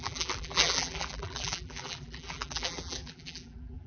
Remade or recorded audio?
remade